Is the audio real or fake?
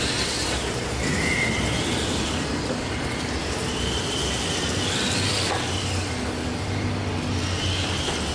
real